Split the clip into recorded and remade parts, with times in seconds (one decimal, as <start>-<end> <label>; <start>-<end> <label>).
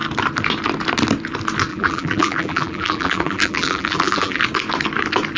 0.0-1.7 recorded; 1.7-4.4 remade; 4.4-5.4 recorded